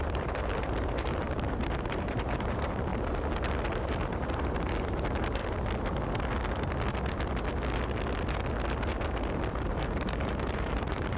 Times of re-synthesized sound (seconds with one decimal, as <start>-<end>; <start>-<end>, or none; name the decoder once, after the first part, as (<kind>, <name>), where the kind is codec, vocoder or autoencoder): 0.0-2.9 (vocoder, BigVGAN v2); 3.7-5.4; 9.7-11.2

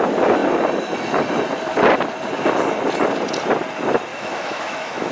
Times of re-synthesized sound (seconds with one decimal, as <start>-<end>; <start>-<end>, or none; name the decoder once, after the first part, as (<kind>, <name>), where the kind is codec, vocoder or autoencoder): 4.1-5.1 (autoencoder, DAC-VAE)

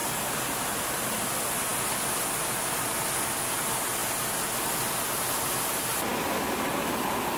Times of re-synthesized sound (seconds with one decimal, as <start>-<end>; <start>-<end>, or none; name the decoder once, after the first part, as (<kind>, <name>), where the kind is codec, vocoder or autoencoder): 0.0-1.2 (vocoder, BigVGAN v2)

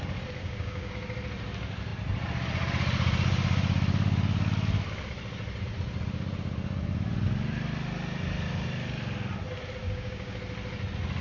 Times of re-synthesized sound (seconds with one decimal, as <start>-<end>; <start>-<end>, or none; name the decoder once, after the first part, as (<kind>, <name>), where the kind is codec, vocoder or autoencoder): 0.4-0.9 (codec, DAC); 9.8-10.4

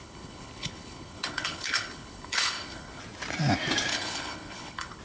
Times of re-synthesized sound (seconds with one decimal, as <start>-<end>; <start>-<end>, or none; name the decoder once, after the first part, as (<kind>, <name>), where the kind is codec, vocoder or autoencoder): 0.0-3.0 (codec, HILCodec); 3.9-5.0

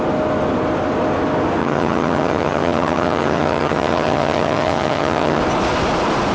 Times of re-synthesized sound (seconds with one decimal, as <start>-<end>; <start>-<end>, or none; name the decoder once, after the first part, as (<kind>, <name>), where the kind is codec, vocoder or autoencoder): 1.6-5.4 (vocoder, HiFi-GAN)

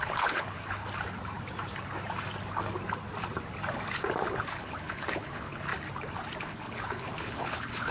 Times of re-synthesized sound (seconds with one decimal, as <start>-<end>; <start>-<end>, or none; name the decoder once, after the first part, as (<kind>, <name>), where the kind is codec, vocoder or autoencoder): 0.0-0.8 (codec, HILCodec); 4.3-5.7; 6.4-7.9

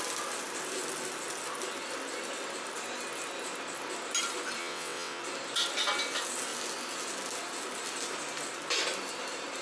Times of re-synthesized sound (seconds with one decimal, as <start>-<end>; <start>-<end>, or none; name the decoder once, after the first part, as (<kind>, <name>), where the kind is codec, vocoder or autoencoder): 4.6-5.2 (vocoder, WaveNeXt)